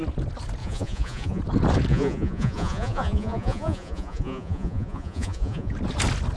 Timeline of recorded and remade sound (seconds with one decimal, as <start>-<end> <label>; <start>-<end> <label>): 0.0-0.6 recorded; 0.6-1.4 remade; 1.4-1.9 recorded; 1.9-5.7 remade; 5.7-6.4 recorded